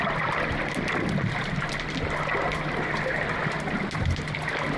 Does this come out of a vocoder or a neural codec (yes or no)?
no